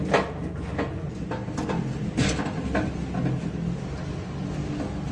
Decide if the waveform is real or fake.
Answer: real